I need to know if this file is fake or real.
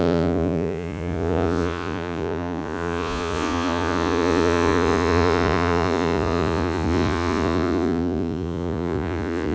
fake